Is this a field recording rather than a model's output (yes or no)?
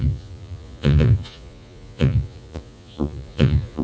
no